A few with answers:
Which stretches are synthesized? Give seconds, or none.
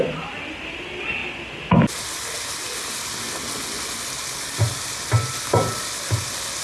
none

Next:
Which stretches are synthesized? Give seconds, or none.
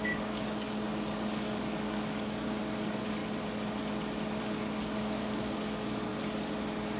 0.0-3.2; 4.4-6.1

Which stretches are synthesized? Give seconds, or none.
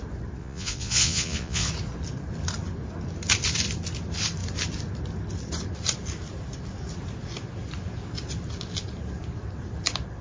0.4-1.7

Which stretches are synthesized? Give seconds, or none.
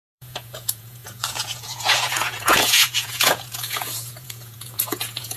0.0-5.4